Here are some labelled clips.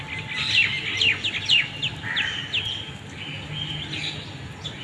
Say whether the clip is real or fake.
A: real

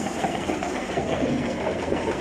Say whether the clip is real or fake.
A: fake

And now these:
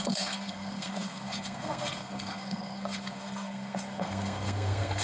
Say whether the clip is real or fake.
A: fake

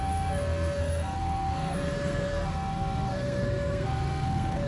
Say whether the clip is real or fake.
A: fake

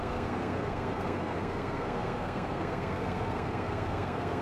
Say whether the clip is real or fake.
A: fake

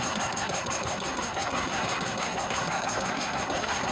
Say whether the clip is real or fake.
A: fake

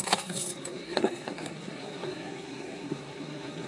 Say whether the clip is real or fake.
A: fake